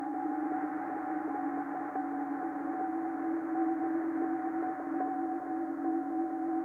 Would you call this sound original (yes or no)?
yes